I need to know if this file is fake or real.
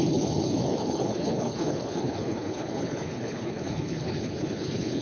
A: fake